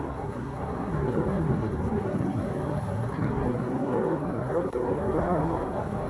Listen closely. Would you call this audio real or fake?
fake